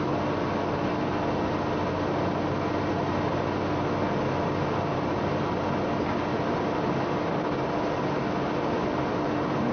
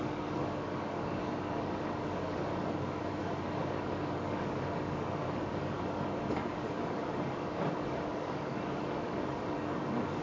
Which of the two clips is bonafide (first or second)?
first